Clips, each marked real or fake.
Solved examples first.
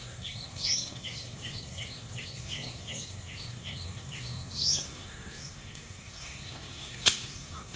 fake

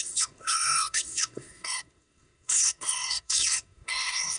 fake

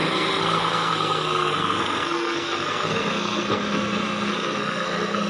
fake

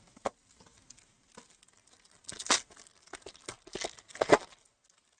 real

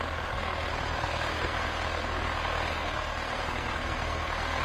fake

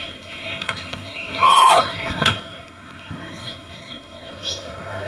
fake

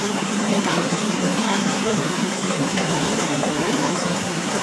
fake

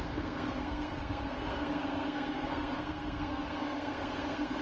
fake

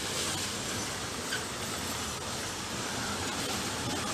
real